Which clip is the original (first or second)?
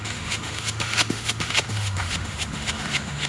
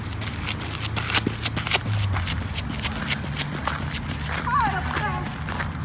second